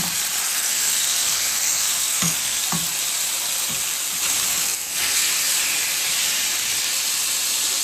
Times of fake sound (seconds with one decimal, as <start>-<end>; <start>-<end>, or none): 0.5-2.6; 4.5-5.3